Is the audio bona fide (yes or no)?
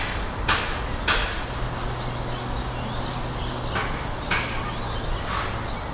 yes